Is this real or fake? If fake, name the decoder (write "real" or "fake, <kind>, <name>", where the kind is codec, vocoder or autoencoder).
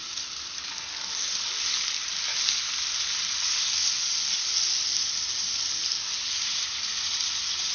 real